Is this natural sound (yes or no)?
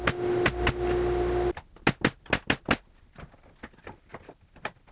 yes